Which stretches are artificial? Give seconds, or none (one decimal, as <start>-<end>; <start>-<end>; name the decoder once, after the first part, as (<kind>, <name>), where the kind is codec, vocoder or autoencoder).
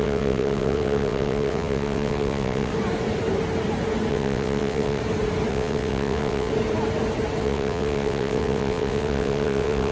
0.0-2.7 (vocoder, WaveNeXt); 4.1-5.0; 5.5-6.5; 7.4-9.9